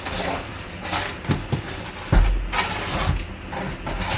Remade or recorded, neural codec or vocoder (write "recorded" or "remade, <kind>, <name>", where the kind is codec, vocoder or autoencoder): recorded